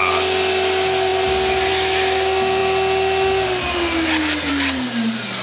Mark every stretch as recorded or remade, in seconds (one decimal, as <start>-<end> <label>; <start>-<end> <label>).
0.0-5.4 recorded